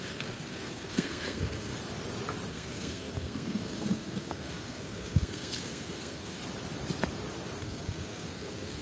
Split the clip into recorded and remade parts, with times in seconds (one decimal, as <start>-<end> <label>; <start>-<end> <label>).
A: 0.0-1.7 remade; 1.7-2.5 recorded; 2.5-6.4 remade; 6.4-7.6 recorded; 7.6-8.8 remade